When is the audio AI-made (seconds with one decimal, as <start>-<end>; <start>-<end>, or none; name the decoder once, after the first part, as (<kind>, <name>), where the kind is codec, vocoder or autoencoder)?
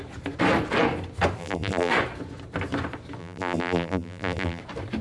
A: 1.4-1.9 (vocoder, BigVGAN v2); 3.2-4.6